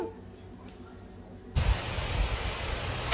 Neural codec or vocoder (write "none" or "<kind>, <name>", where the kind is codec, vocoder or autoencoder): none